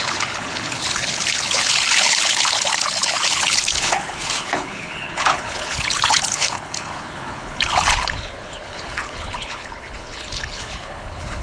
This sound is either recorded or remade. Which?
remade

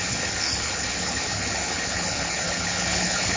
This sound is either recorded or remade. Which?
remade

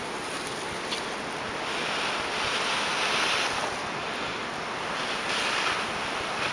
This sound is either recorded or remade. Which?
recorded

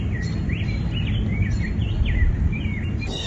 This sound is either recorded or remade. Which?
recorded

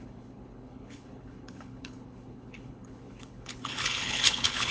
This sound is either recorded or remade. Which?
remade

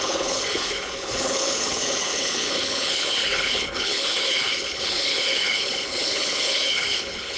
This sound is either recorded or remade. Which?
remade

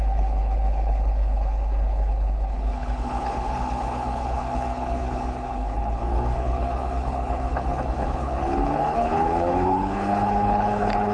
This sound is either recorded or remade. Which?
remade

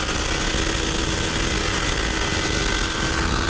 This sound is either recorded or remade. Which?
recorded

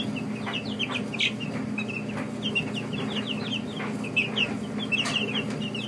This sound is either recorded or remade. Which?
recorded